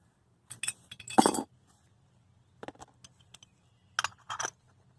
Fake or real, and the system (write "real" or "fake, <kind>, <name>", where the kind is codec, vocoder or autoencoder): real